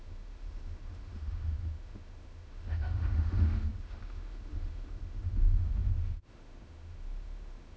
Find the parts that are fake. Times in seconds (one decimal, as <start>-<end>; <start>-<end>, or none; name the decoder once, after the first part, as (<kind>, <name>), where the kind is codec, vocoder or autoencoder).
0.0-7.8 (autoencoder, DAC-VAE)